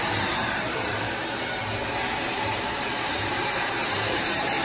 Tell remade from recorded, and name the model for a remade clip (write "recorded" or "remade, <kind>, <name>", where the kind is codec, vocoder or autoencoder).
remade, vocoder, BigVGAN v2